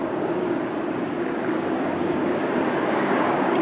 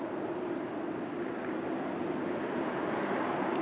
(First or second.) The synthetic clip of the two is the first